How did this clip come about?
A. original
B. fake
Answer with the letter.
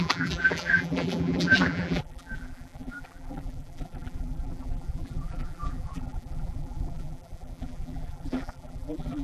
B